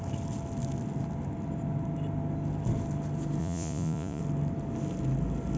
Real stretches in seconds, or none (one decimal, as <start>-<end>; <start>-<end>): 0.0-3.4; 4.2-5.6